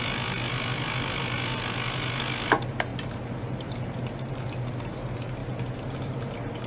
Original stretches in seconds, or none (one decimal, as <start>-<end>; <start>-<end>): 0.0-6.7